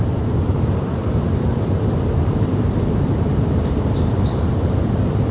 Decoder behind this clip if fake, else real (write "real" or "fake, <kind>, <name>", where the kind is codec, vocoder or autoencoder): fake, vocoder, BigVGAN v2